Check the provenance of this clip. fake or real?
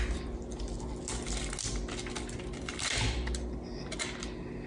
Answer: real